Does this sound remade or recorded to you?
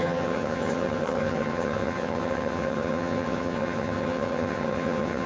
remade